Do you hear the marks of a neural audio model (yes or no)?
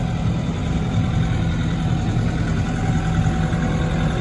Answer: no